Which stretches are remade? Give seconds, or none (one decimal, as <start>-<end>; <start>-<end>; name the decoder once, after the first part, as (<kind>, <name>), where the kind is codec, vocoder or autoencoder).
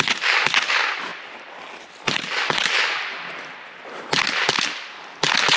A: 1.1-4.5 (vocoder, BigVGAN v2)